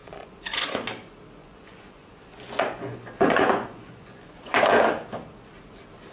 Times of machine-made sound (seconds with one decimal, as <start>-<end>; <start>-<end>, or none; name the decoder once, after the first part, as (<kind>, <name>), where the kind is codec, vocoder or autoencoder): 0.0-0.8 (vocoder, Vocos); 1.4-4.6